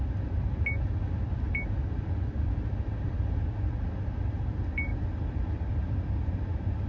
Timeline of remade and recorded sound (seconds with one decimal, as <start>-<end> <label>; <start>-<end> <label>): 0.0-6.9 recorded